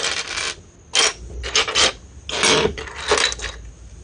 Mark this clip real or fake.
real